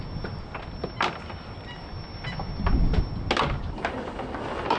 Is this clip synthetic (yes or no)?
no